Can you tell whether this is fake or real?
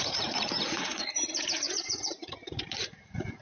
fake